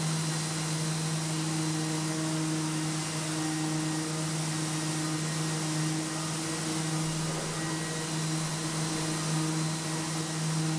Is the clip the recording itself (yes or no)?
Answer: yes